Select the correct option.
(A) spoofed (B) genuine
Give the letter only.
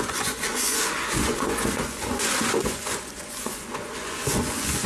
A